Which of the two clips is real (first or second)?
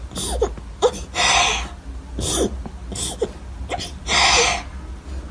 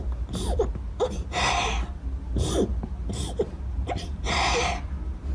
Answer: first